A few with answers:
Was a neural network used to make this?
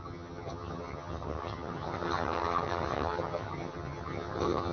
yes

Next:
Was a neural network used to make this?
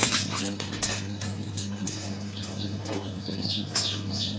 yes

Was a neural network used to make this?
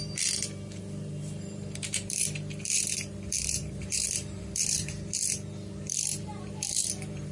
yes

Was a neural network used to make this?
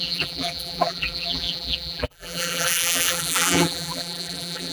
yes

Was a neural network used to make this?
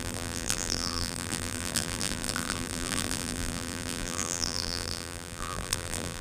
yes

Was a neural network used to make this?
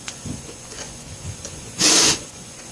yes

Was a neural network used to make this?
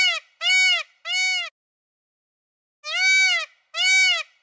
no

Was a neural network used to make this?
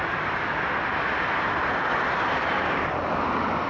yes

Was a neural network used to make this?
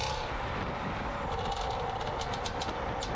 yes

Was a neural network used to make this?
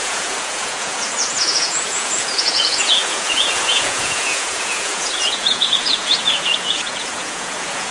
yes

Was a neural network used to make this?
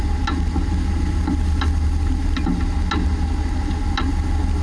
no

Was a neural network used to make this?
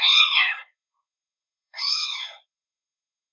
yes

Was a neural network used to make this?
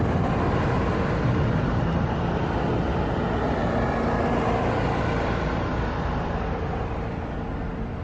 no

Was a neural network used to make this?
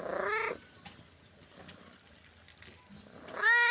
no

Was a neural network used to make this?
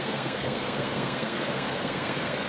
yes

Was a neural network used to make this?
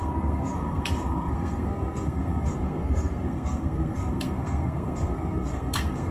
yes